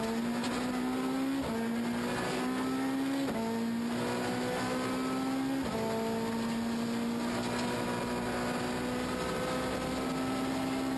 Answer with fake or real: real